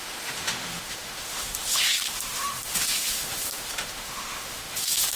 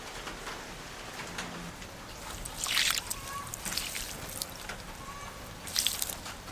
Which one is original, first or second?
second